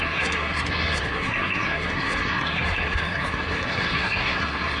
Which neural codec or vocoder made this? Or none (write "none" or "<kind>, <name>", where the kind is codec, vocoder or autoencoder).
codec, SNAC